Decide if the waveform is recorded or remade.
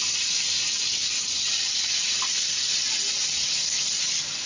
recorded